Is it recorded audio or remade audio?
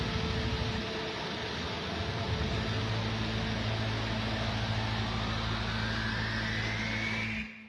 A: recorded